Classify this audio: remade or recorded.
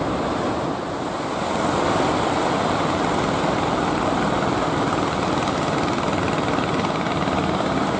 recorded